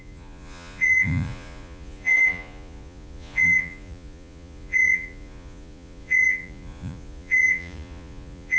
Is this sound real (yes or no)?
no